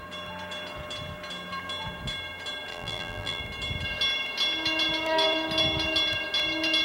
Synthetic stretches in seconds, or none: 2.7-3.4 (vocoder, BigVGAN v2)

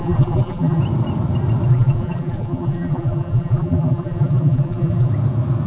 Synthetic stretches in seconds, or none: 0.0-0.8 (vocoder, BigVGAN v2); 1.7-5.1